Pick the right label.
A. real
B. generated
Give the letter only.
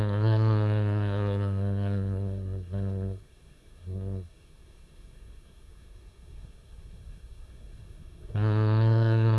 B